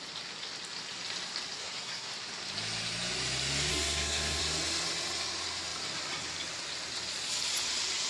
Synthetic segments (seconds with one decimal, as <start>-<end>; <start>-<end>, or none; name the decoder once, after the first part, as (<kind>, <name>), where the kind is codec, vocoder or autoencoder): 1.6-2.1 (codec, SNAC); 3.7-4.4